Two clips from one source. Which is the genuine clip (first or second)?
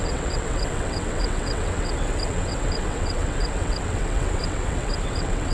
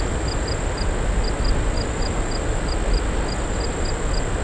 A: second